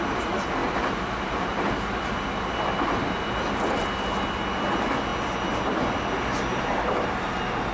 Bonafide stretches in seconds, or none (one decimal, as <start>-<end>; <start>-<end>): 0.0-7.7

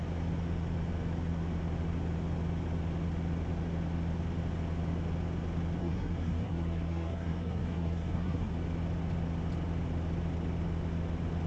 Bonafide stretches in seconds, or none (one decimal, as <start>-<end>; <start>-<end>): 0.0-5.8; 8.5-11.5

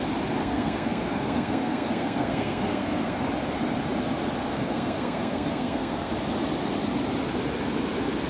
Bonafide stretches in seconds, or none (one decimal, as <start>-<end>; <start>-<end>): 0.0-0.4; 3.3-4.5; 6.1-8.3

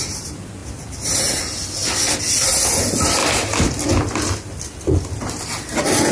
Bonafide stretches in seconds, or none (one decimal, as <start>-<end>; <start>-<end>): 0.0-6.1

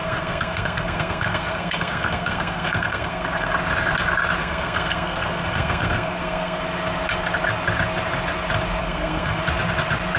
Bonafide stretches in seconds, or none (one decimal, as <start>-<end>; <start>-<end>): 3.5-4.4; 6.6-8.8; 9.4-10.2

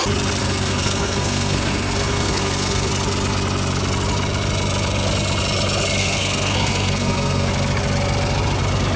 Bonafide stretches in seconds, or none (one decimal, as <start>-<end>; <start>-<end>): 0.0-0.4; 2.9-6.0; 7.5-9.0

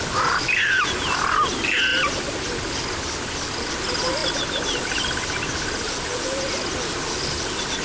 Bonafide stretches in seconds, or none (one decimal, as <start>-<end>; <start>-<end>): 0.0-7.8

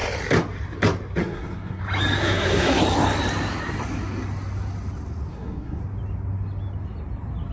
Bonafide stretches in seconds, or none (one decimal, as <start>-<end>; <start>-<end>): 0.0-1.2; 1.8-2.2; 2.8-5.3; 5.8-7.5